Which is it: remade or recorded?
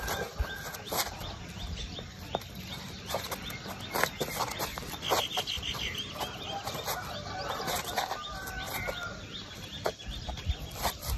recorded